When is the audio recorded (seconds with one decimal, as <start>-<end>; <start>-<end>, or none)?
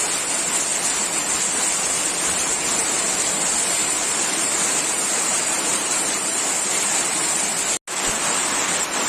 0.0-3.8; 7.6-9.1